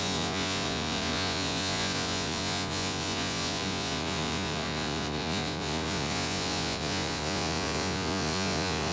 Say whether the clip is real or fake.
fake